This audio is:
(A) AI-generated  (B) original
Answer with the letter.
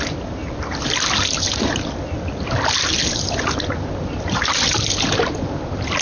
B